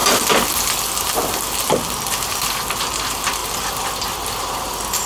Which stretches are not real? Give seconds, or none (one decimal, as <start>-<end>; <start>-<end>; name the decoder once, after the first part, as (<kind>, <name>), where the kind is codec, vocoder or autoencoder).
none